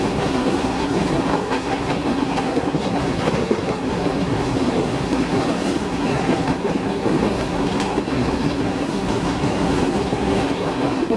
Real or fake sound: fake